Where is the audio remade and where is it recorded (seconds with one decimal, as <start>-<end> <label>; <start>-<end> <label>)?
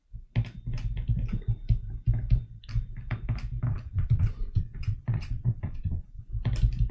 0.0-3.7 recorded; 3.7-6.2 remade; 6.2-6.9 recorded